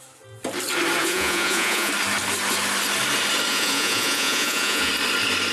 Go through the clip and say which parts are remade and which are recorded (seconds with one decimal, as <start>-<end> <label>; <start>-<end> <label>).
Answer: 0.0-1.0 recorded; 1.0-1.9 remade; 1.9-3.5 recorded; 3.5-4.9 remade; 4.9-5.5 recorded